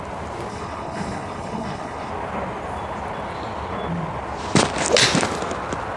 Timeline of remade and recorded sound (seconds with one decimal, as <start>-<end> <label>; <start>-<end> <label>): 0.0-0.5 recorded; 0.5-2.1 remade; 2.1-6.0 recorded